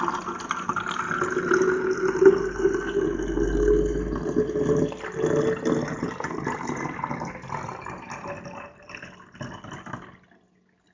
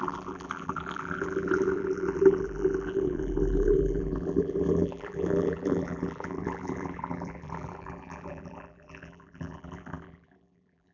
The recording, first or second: first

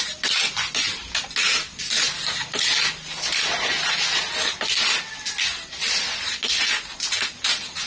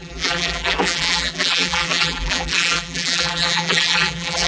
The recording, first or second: first